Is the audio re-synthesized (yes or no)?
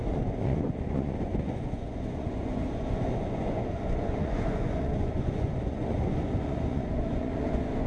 yes